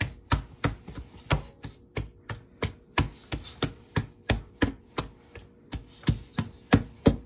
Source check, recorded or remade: recorded